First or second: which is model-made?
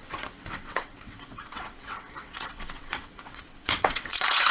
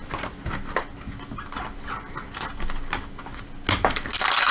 first